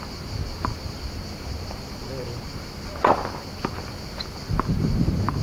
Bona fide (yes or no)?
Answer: yes